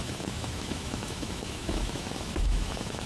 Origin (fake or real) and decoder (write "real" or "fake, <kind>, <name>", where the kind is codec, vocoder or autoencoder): fake, autoencoder, DAC-VAE